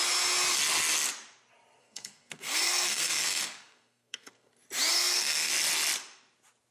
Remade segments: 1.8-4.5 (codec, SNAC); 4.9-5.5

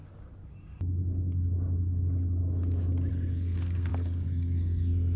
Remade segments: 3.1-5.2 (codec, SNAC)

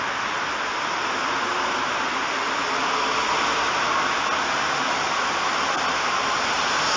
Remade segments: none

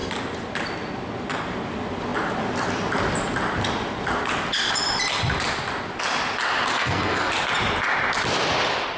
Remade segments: 6.7-7.3 (codec, SNAC)

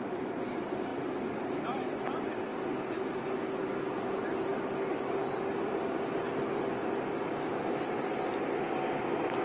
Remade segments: none